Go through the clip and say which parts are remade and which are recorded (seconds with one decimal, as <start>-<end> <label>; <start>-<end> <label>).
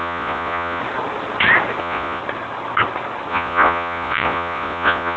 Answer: 0.0-0.8 remade; 0.8-1.8 recorded; 1.8-2.2 remade; 2.2-3.3 recorded; 3.3-5.2 remade